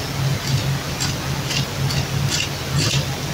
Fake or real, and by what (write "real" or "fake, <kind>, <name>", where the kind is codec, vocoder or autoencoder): real